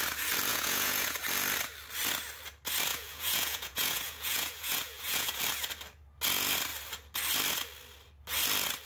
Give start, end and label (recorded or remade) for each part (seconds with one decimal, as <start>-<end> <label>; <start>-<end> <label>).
0.0-0.5 recorded; 0.5-1.2 remade; 1.2-2.9 recorded; 2.9-5.4 remade; 5.4-8.9 recorded